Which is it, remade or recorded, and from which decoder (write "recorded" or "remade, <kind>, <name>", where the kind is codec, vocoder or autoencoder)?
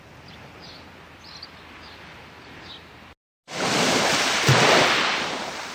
recorded